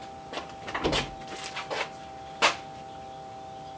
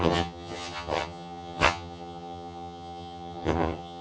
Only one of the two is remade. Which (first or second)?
second